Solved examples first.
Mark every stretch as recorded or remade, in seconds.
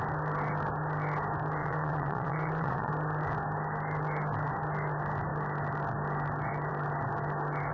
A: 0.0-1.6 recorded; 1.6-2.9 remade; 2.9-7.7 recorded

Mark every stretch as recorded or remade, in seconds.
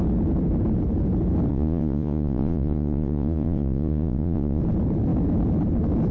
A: 0.0-1.5 recorded; 1.5-4.6 remade; 4.6-6.1 recorded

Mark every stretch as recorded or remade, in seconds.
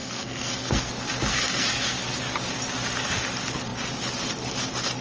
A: 0.0-0.9 remade; 0.9-1.3 recorded; 1.3-2.0 remade; 2.0-5.0 recorded